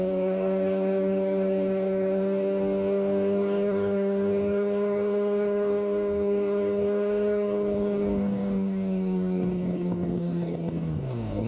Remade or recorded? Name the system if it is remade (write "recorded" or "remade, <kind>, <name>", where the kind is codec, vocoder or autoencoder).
remade, codec, DAC